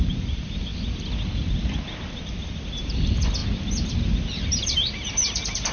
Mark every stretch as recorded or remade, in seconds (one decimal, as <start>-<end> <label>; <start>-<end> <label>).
0.0-0.7 remade; 0.7-2.1 recorded; 2.1-3.4 remade; 3.4-3.9 recorded; 3.9-5.7 remade